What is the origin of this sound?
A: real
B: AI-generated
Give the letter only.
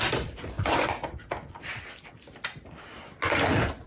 A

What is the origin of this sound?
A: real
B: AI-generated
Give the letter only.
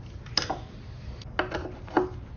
A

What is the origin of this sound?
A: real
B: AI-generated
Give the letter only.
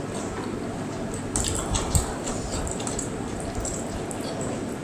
A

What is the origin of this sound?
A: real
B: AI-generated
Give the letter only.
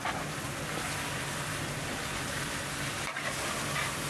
A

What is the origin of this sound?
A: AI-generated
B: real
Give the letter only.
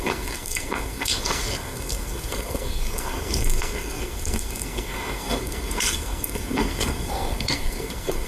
A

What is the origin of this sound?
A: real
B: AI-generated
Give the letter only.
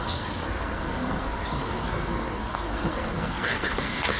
B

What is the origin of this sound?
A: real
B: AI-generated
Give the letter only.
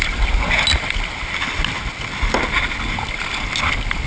A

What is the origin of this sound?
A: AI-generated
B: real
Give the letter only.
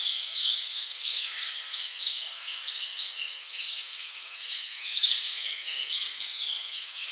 A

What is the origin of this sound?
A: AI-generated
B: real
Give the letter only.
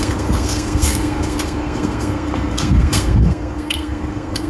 A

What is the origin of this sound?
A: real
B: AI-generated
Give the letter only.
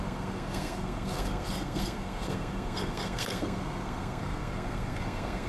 B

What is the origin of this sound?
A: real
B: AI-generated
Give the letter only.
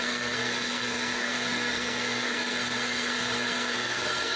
B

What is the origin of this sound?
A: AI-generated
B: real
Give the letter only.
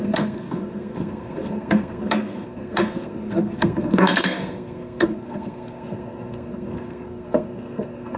A